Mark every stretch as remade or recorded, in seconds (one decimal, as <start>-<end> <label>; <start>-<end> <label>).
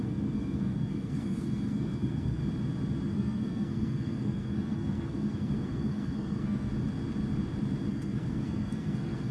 0.0-2.4 remade; 2.4-3.1 recorded; 3.1-6.7 remade; 6.7-7.9 recorded; 7.9-9.3 remade